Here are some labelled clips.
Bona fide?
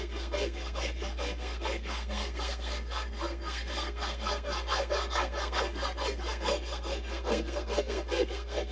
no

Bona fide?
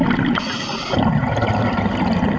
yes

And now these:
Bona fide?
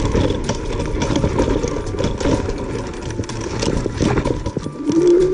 yes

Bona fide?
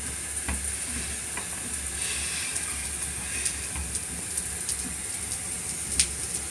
yes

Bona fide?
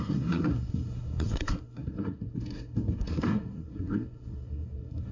no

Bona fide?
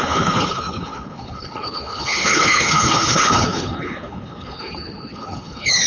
no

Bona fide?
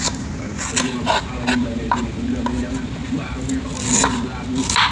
yes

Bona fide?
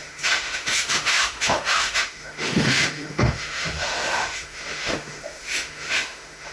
no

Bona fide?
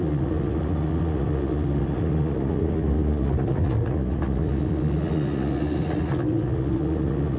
no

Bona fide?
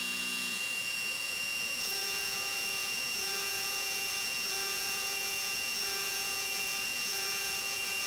no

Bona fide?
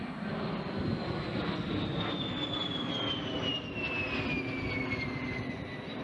yes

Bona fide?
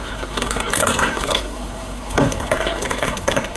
no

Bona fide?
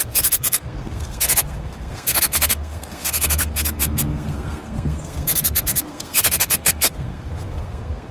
no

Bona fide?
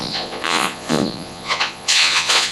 no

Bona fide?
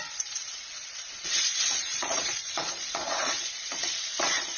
no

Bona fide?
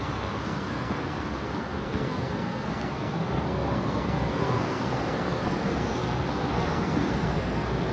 no